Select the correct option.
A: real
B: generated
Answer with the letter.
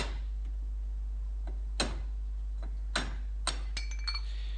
A